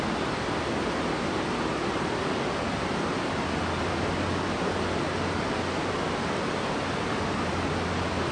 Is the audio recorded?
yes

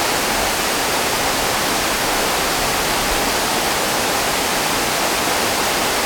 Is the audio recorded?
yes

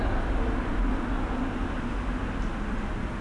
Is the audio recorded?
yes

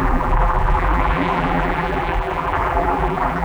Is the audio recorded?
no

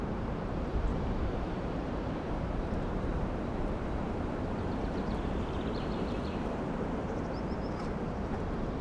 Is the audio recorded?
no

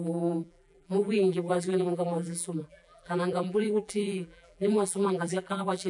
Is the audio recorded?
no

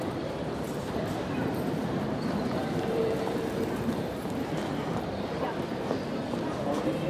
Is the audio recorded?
no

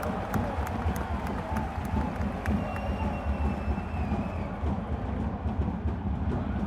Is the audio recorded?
yes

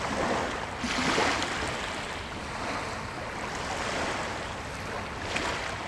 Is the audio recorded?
yes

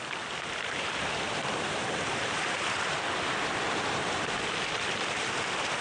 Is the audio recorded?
no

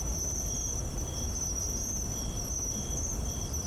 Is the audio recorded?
no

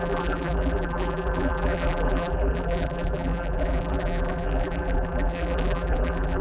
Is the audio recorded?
no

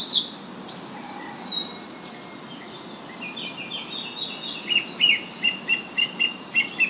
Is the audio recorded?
yes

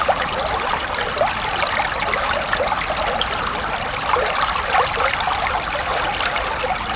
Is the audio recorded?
yes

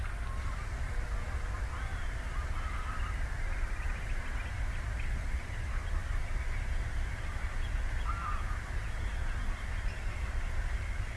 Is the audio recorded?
yes